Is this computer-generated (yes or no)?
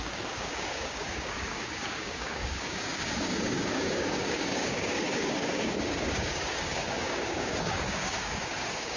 yes